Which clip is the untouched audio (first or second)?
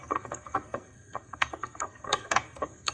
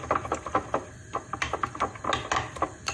second